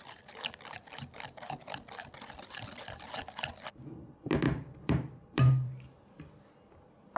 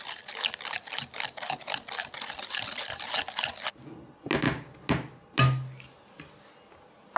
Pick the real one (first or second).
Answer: second